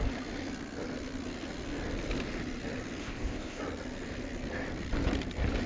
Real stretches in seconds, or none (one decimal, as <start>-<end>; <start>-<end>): 0.0-3.0; 3.6-5.7